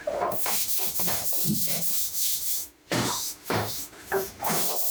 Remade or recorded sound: remade